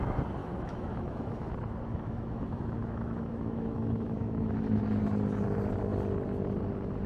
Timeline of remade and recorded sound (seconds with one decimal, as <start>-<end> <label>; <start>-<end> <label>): 0.0-0.4 recorded; 0.4-1.5 remade; 1.5-1.9 recorded; 1.9-4.8 remade; 4.8-7.1 recorded